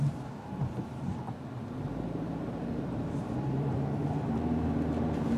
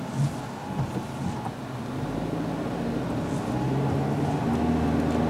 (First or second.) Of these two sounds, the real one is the second